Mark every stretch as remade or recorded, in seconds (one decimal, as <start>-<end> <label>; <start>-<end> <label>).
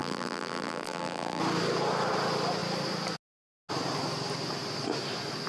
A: 0.0-1.4 remade; 1.4-5.5 recorded